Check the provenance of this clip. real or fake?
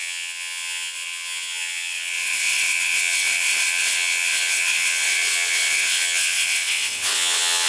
fake